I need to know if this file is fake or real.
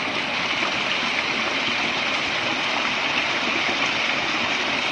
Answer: real